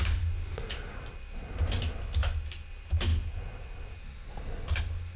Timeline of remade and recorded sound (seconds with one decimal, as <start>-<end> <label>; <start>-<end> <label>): 0.0-5.2 recorded